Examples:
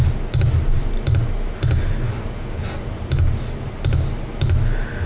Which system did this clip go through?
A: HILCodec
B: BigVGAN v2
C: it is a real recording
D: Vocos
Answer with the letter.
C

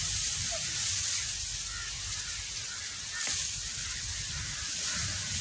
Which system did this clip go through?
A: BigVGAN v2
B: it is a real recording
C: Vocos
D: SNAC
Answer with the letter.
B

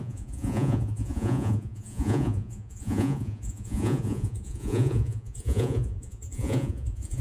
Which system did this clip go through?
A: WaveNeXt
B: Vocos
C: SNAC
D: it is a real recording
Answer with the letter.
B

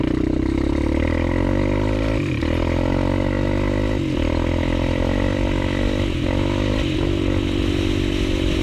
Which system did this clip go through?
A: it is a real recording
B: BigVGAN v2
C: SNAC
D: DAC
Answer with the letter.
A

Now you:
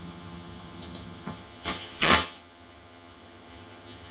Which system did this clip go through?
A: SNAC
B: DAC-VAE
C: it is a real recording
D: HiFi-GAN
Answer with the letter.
D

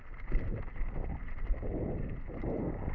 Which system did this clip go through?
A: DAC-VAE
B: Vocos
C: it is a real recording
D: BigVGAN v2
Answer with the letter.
C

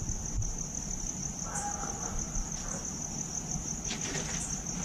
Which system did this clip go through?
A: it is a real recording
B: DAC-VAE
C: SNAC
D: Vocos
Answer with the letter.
A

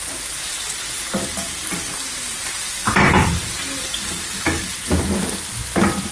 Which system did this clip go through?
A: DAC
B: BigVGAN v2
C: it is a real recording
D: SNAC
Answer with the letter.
C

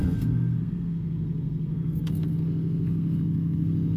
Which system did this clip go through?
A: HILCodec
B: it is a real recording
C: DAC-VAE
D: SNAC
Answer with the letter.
D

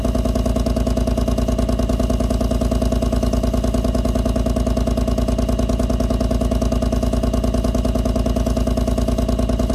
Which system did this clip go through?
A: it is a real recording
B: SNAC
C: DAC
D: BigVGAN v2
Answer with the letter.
A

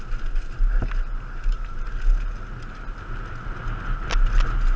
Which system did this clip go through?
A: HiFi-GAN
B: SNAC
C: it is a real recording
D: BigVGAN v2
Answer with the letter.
C